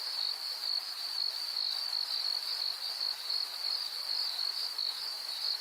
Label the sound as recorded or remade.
recorded